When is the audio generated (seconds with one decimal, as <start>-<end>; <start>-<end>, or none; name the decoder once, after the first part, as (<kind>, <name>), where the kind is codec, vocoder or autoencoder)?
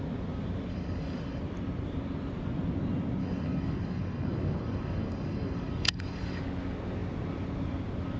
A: 0.7-1.4 (codec, DAC); 3.2-6.4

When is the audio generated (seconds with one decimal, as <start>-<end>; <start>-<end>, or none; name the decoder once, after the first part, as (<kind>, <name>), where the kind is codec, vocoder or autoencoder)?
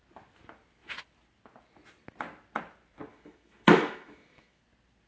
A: 3.1-4.6 (autoencoder, DAC-VAE)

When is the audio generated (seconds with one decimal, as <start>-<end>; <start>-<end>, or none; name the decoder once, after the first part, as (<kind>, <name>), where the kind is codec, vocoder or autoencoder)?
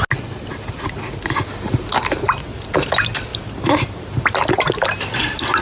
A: 3.3-4.6 (vocoder, BigVGAN v2)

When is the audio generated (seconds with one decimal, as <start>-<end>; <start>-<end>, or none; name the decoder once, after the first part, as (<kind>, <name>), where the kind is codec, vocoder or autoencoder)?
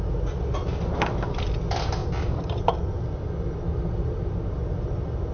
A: none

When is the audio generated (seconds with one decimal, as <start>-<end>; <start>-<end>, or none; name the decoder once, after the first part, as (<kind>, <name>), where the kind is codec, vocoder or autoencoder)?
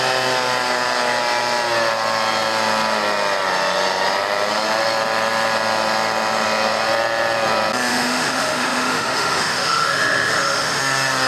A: 7.9-10.8 (autoencoder, DAC-VAE)